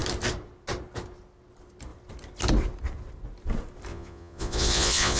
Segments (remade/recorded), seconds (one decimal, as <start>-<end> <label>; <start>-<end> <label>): 0.0-3.9 recorded; 3.9-5.2 remade